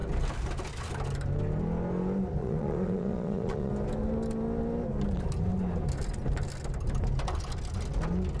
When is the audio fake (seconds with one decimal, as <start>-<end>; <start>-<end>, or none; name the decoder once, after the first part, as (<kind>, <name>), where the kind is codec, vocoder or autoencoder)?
2.4-3.7 (vocoder, Vocos)